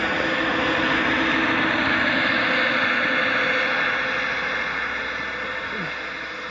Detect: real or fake real